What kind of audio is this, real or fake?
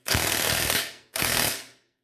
fake